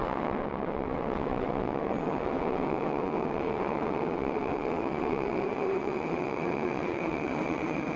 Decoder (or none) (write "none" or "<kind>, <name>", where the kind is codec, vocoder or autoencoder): vocoder, WaveNeXt